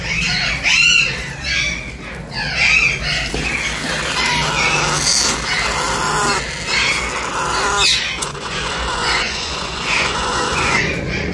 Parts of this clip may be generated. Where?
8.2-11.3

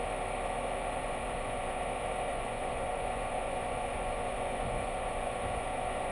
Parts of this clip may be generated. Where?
1.0-1.8; 2.3-6.1

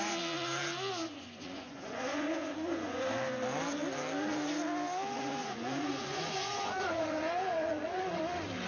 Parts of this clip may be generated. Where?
1.0-3.0; 5.4-8.2

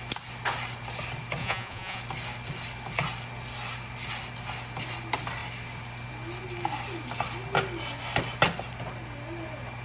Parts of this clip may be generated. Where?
1.4-2.0

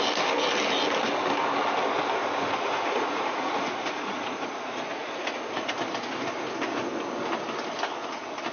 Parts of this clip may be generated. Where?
2.2-5.7

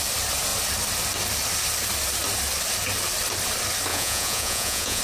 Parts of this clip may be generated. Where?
3.9-5.0

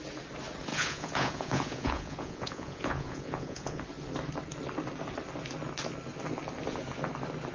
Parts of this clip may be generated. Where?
0.7-3.8